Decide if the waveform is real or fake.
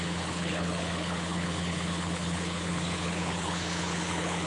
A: fake